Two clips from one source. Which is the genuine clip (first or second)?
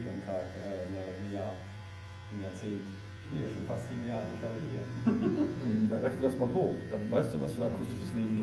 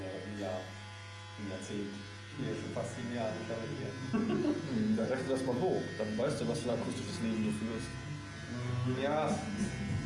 second